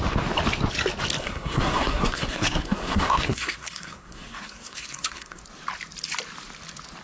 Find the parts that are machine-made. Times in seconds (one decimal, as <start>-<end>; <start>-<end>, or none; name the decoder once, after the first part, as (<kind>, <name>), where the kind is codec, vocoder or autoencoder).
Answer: 1.2-5.4 (codec, SNAC)